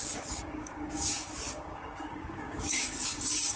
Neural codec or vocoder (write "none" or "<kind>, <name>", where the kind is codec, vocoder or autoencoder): codec, DAC